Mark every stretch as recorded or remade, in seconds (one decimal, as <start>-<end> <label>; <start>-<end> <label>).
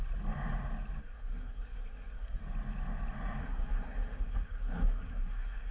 0.0-1.0 recorded; 1.0-2.4 remade; 2.4-3.4 recorded; 3.4-5.7 remade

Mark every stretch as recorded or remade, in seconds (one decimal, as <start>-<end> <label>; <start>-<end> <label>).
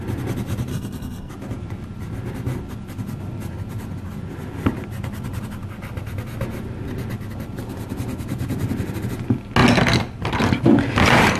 0.0-0.7 recorded; 0.7-1.3 remade; 1.3-11.4 recorded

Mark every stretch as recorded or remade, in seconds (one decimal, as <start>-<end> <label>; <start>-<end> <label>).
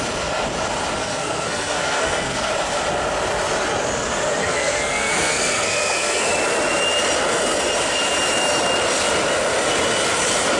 0.0-1.0 recorded; 1.0-2.5 remade; 2.5-4.4 recorded; 4.4-6.3 remade; 6.3-10.6 recorded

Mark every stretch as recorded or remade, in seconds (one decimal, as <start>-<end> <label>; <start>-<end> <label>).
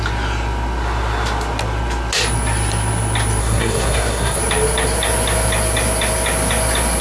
0.0-3.4 recorded; 3.4-4.4 remade; 4.4-7.0 recorded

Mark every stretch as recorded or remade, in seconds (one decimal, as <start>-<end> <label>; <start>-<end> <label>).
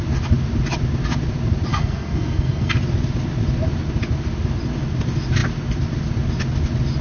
0.0-1.7 recorded; 1.7-2.7 remade; 2.7-7.0 recorded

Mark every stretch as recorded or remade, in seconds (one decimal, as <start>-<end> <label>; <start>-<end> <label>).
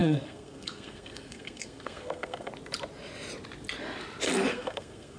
0.0-2.5 remade; 2.5-4.5 recorded; 4.5-5.2 remade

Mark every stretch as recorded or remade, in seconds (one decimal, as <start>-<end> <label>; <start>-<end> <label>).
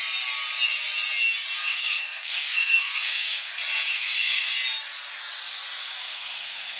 0.0-1.6 recorded; 1.6-3.5 remade; 3.5-3.9 recorded; 3.9-4.5 remade; 4.5-5.8 recorded; 5.8-6.8 remade